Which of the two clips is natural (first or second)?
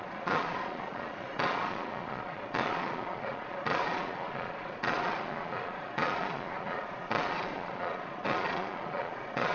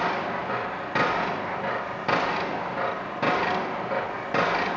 second